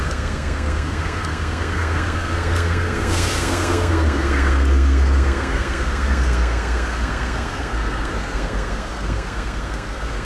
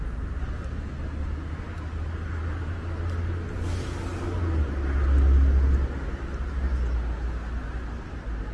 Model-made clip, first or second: first